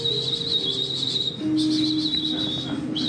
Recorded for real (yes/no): yes